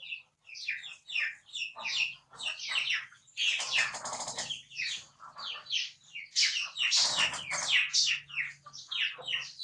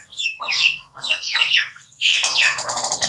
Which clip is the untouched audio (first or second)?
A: first